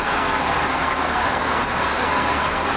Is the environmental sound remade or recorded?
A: remade